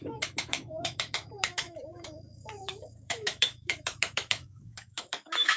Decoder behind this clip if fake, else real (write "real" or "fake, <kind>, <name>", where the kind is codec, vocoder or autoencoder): fake, autoencoder, DAC-VAE